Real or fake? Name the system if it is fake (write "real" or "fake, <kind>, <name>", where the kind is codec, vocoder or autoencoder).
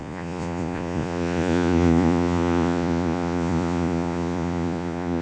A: fake, vocoder, Vocos